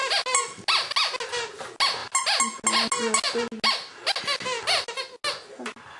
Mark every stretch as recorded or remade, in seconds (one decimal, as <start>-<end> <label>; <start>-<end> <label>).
0.0-6.0 recorded